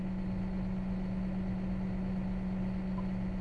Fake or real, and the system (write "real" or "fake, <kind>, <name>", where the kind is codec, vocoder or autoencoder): real